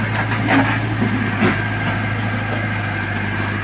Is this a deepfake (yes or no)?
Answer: no